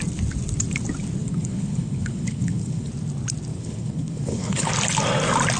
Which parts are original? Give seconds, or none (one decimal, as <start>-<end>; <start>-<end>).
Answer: 0.0-1.2; 2.9-3.5; 4.7-5.6